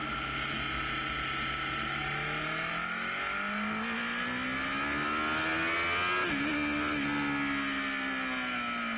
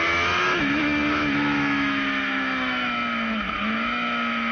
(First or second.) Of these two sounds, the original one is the first